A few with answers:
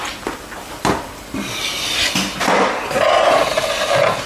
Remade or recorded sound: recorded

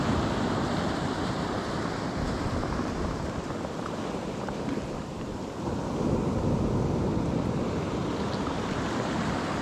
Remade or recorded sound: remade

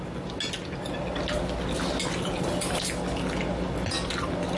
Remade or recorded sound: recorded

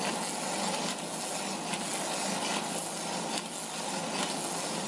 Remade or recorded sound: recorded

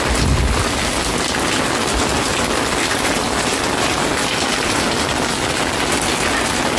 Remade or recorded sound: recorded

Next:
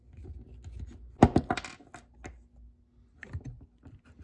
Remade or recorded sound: recorded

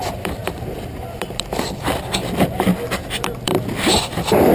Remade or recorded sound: recorded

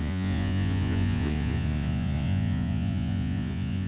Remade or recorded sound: remade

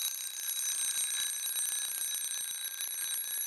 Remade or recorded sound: remade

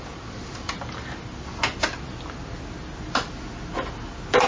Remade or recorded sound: recorded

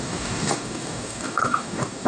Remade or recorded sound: remade